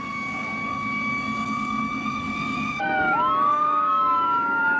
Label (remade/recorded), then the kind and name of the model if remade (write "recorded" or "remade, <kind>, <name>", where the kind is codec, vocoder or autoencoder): remade, codec, DAC